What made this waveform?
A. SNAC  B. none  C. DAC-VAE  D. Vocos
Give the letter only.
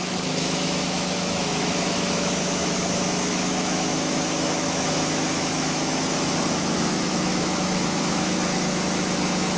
C